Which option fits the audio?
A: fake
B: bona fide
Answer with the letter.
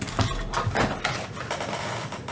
B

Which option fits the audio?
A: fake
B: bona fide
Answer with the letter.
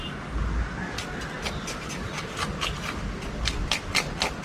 B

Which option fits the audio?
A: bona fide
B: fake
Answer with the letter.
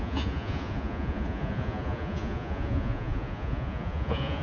B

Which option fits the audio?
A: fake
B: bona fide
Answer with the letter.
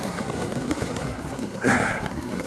A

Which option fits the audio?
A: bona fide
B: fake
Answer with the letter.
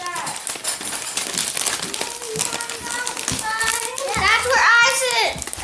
A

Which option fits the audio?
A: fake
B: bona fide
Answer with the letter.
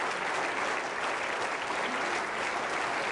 B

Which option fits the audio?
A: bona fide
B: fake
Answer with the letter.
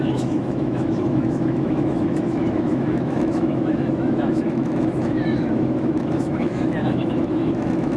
B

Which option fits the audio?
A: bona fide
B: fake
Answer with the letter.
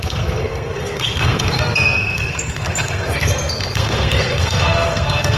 B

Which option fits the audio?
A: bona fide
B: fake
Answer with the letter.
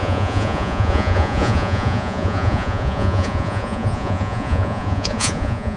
B